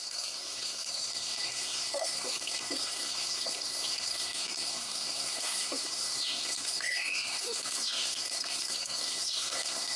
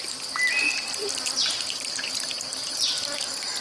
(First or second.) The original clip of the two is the second